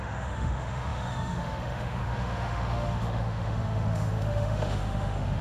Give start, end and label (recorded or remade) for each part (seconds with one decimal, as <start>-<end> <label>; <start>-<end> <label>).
0.0-5.4 remade